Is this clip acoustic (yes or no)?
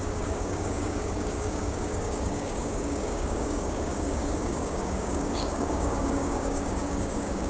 no